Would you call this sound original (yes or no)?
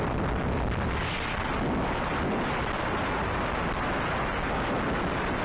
yes